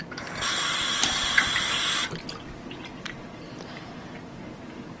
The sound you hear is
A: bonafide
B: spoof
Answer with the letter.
A